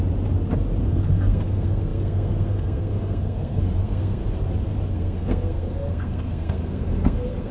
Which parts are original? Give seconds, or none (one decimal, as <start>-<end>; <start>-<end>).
0.0-0.8; 4.2-4.9